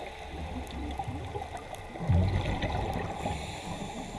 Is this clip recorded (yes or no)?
yes